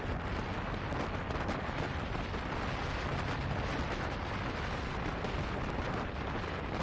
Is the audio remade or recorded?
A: recorded